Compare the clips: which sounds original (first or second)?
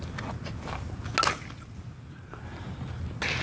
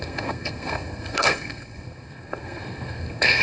first